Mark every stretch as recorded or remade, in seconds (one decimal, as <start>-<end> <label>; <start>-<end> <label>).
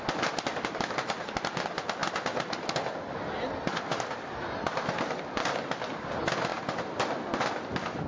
0.0-8.1 recorded